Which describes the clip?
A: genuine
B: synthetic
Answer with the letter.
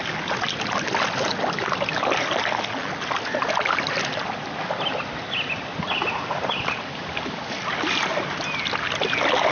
A